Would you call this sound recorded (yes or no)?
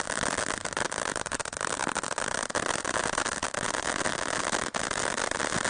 yes